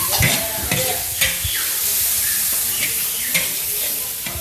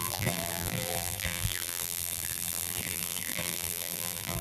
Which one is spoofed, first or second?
second